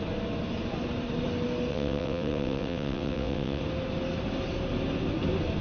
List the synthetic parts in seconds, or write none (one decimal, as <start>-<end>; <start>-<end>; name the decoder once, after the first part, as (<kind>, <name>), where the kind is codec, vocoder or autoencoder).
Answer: 1.7-3.6 (vocoder, WaveNeXt)

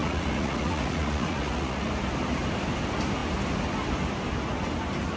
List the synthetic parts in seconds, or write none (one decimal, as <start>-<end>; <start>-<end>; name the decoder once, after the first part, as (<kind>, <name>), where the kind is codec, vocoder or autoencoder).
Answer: 0.0-1.9 (vocoder, Vocos)

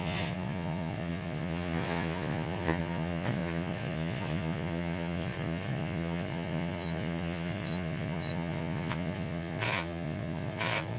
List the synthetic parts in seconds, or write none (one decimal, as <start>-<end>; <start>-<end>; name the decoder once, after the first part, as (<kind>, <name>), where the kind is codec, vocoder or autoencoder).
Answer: 0.0-11.0 (vocoder, Vocos)

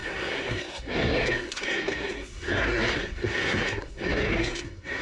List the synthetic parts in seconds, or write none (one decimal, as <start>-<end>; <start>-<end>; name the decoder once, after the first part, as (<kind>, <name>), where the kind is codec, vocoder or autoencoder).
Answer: 0.0-5.0 (codec, SNAC)

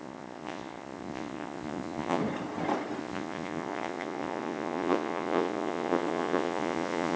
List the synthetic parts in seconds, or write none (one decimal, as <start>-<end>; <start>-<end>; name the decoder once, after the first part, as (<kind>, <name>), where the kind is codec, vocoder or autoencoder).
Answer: 0.0-2.2 (vocoder, Vocos); 3.0-7.2